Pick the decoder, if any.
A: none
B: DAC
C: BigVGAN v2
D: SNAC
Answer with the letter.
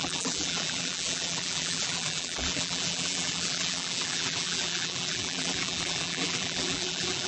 C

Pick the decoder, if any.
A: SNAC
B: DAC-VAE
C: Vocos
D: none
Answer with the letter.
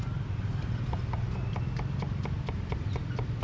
D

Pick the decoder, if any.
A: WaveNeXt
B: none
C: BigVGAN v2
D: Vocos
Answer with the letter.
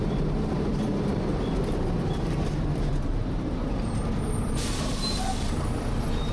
C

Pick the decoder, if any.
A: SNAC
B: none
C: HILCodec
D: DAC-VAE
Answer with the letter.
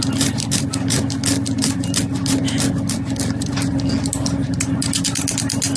B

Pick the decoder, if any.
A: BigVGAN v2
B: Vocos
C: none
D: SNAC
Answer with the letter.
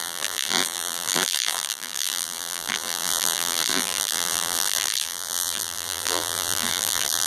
A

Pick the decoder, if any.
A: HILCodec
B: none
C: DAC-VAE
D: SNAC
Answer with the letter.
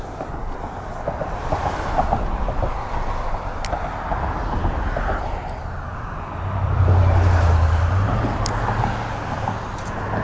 B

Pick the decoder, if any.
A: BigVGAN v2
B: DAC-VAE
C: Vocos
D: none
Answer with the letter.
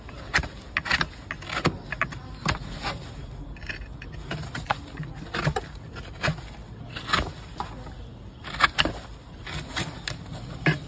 D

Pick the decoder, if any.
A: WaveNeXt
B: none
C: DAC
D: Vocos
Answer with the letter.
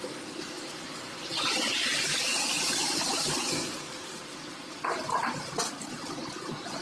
B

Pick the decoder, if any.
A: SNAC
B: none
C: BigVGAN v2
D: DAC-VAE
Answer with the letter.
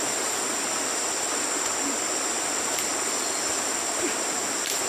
B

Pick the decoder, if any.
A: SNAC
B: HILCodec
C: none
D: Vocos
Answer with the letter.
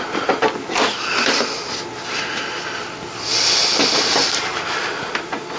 C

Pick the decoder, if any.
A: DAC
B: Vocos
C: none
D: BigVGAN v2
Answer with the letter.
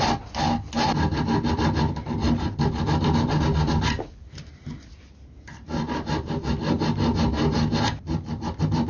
C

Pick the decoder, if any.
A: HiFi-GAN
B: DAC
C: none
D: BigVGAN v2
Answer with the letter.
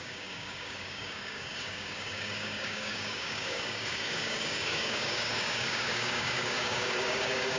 B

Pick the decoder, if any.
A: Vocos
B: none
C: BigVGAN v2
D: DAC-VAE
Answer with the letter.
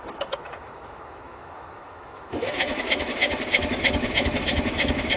D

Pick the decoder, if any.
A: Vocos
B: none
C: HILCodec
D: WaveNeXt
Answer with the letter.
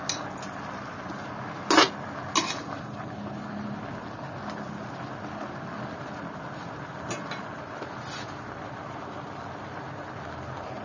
B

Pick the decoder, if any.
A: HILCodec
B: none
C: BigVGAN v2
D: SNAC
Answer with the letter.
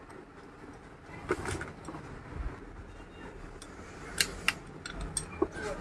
B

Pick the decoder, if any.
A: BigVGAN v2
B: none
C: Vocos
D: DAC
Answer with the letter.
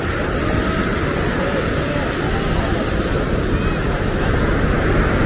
B